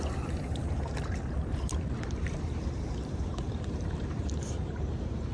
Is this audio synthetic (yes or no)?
yes